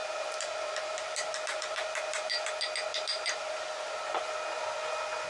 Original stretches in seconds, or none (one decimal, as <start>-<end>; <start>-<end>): 2.5-2.9; 3.9-5.3